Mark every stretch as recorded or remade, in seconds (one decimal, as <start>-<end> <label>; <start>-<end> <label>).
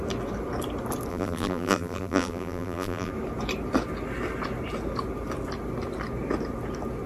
0.0-1.1 recorded; 1.1-3.1 remade; 3.1-7.1 recorded